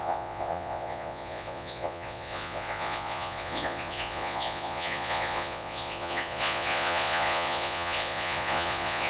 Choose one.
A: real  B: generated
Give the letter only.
B